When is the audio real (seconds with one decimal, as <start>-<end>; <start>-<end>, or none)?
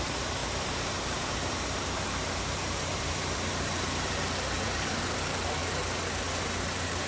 5.6-6.6